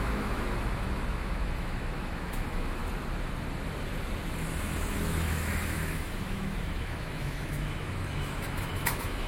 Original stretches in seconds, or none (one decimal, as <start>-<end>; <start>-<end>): 2.8-4.4

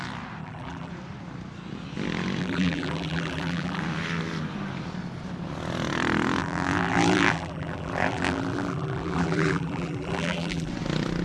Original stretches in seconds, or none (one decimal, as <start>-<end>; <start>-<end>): 0.0-0.4; 0.9-2.4; 3.8-6.4; 10.7-11.2

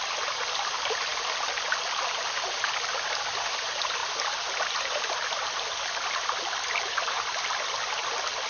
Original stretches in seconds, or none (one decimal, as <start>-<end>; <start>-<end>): 0.0-8.5

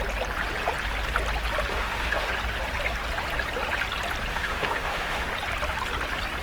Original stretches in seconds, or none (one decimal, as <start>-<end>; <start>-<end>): 0.0-1.7; 2.3-4.3; 5.3-6.4